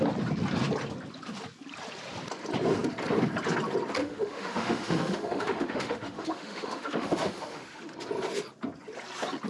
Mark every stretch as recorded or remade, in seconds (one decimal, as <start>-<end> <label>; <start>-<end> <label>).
0.0-4.0 recorded; 4.0-7.8 remade; 7.8-9.5 recorded